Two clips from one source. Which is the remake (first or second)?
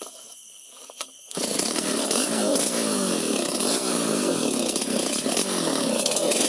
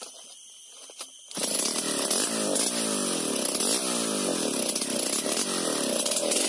first